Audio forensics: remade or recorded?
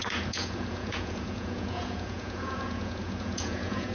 remade